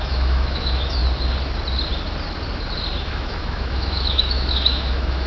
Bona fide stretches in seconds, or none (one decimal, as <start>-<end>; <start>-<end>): 1.0-3.0